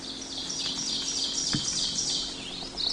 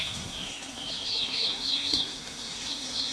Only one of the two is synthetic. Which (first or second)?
second